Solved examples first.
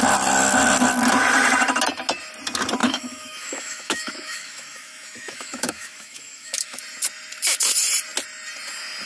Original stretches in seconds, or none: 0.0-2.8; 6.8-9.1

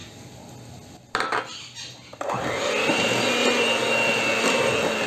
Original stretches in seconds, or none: 0.0-5.1

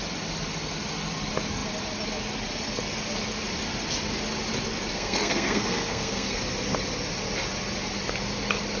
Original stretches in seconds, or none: 0.0-4.9; 6.4-8.8

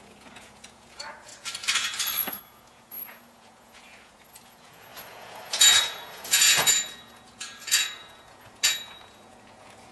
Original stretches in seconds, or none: 1.3-2.3

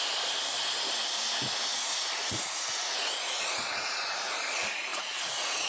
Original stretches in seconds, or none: 0.0-1.7; 4.0-4.9

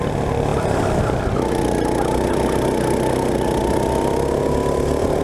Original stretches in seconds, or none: 0.0-5.2

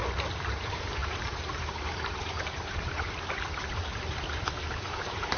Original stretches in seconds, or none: 0.0-0.5; 3.9-4.7

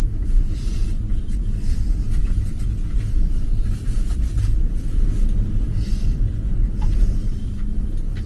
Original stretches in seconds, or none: none